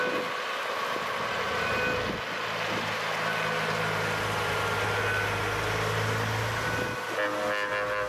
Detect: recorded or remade recorded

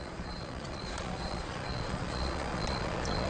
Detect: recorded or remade remade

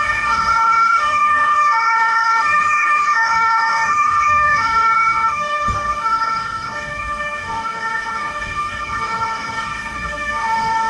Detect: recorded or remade remade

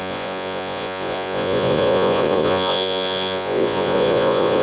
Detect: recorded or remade remade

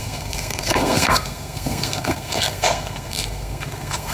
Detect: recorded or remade remade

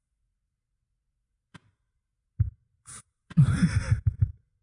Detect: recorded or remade remade